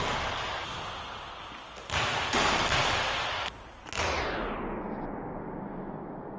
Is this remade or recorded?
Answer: recorded